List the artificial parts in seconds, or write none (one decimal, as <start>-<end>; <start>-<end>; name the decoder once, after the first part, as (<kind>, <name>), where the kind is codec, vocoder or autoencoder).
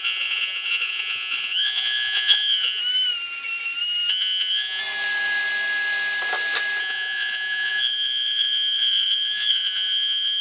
0.0-2.8 (vocoder, Vocos); 4.1-4.8; 6.8-10.4